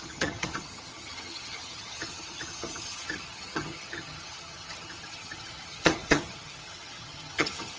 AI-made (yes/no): yes